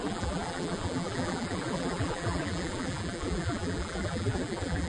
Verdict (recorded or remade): remade